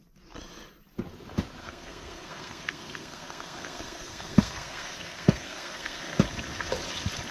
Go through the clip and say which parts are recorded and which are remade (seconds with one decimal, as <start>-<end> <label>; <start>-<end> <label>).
0.0-1.6 recorded; 1.6-6.0 remade; 6.0-7.3 recorded